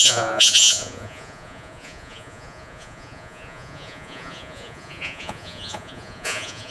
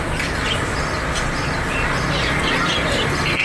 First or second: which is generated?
first